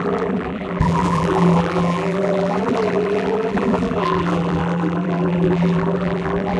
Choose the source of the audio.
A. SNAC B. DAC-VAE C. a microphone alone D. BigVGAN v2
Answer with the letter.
D